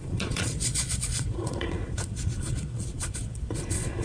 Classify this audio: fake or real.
fake